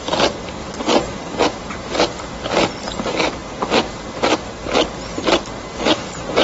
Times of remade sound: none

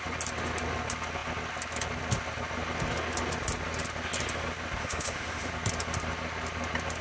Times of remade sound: 4.8-5.5